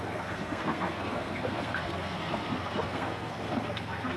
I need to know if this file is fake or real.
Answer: fake